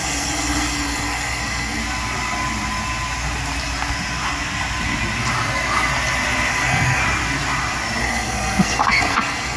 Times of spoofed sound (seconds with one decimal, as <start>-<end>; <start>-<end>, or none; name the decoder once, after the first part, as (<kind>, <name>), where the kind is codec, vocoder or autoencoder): 0.0-1.8 (codec, SNAC); 6.5-7.0; 8.0-9.6